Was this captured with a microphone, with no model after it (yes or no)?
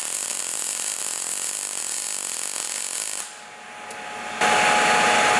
yes